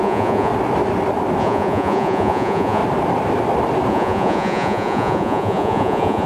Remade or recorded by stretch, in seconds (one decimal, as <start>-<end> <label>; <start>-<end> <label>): 0.0-0.5 remade; 0.5-1.4 recorded; 1.4-2.8 remade; 2.8-3.9 recorded; 3.9-6.3 remade